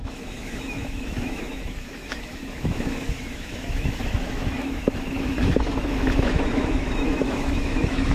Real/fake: fake